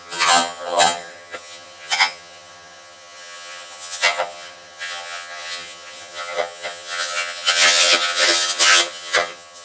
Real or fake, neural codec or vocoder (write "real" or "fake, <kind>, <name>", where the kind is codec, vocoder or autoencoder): fake, vocoder, HiFi-GAN